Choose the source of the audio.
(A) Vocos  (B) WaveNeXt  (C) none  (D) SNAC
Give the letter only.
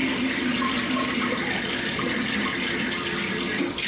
C